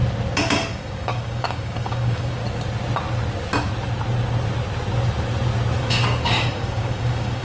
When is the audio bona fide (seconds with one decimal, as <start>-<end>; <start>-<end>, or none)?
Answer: 0.0-0.7; 2.4-5.8